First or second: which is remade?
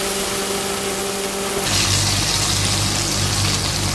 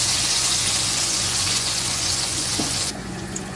second